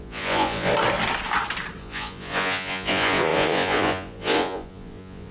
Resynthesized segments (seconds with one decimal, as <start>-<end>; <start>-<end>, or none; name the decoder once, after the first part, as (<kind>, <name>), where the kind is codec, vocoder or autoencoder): 0.0-0.7 (vocoder, Vocos); 1.8-5.3